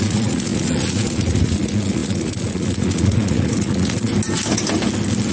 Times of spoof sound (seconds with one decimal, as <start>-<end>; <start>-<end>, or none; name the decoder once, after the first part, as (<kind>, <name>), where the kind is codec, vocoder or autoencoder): 0.0-4.1 (vocoder, Vocos)